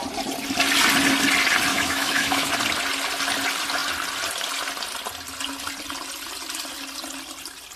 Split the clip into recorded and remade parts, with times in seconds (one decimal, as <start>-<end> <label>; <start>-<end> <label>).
0.0-1.7 recorded; 1.7-2.5 remade; 2.5-7.8 recorded